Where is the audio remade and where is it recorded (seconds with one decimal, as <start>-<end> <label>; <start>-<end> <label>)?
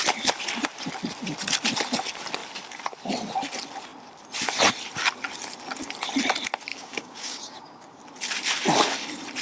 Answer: 0.0-6.7 recorded; 6.7-8.0 remade; 8.0-9.4 recorded